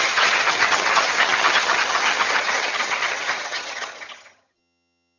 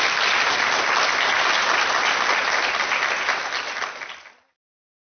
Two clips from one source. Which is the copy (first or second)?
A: first